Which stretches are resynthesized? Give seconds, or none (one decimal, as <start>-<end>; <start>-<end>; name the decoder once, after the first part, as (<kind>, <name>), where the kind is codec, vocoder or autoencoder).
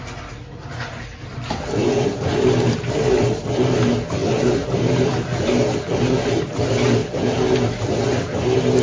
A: 1.3-3.5 (vocoder, BigVGAN v2)